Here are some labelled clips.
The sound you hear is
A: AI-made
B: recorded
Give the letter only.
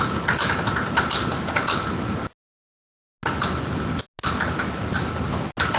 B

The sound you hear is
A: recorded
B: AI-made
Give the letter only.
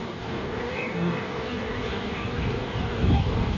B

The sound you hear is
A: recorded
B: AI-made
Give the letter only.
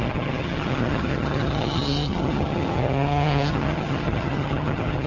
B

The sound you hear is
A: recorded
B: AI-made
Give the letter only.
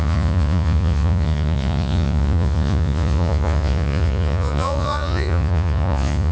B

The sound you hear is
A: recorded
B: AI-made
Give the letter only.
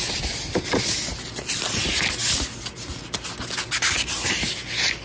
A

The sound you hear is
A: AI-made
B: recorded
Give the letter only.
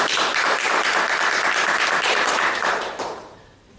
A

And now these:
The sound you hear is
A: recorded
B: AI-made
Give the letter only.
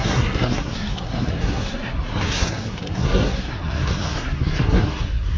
B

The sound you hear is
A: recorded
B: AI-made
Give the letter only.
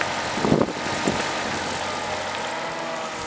A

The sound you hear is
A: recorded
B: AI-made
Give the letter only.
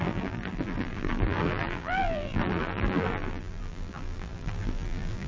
B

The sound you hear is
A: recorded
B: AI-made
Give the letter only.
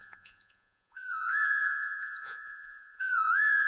B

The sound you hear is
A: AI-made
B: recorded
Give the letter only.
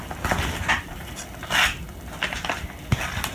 B